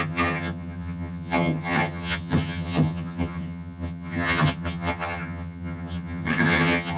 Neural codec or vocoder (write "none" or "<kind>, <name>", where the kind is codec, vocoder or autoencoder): vocoder, HiFi-GAN